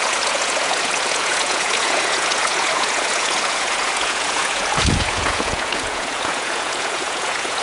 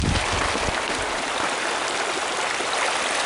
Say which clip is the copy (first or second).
first